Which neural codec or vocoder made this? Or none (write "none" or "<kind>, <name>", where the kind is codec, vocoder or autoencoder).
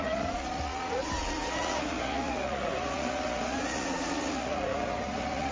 vocoder, Vocos